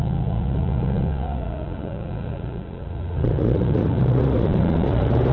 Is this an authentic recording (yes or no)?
no